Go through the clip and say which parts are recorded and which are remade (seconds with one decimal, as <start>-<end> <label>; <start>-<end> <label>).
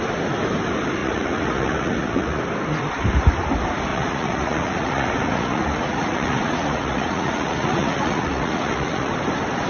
0.0-1.0 recorded; 1.0-2.4 remade; 2.4-3.9 recorded; 3.9-9.1 remade; 9.1-9.7 recorded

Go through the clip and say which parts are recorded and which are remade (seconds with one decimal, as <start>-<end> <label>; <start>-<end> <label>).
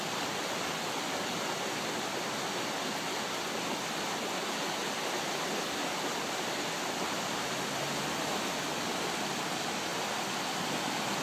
0.0-11.2 recorded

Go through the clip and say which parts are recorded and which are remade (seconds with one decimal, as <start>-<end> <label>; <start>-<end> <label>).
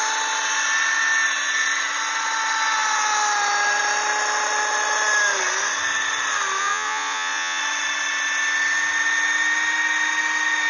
0.0-6.6 recorded; 6.6-7.6 remade; 7.6-10.7 recorded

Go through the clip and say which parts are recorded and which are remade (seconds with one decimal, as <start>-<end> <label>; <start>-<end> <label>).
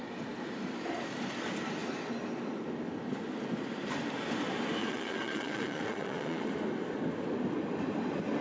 0.0-4.8 recorded; 4.8-6.5 remade; 6.5-8.4 recorded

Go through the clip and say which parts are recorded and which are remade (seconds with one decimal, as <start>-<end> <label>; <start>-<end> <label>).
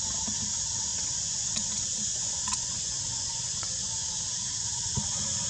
0.0-0.9 recorded; 0.9-4.2 remade; 4.2-5.5 recorded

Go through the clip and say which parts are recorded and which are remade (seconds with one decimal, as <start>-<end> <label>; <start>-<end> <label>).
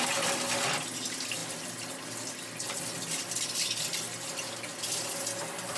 0.0-5.8 recorded